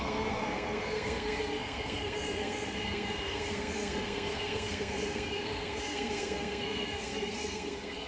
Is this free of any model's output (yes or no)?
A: no